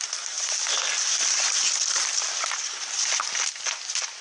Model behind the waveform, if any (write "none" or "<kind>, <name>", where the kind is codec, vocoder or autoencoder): none